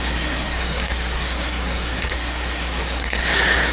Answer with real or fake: fake